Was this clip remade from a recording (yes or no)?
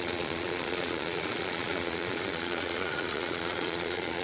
yes